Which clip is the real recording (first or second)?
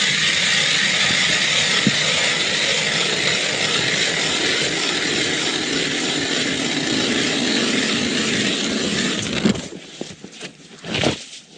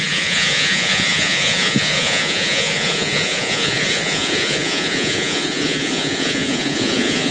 first